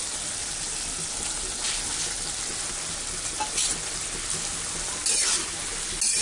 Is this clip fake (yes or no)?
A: no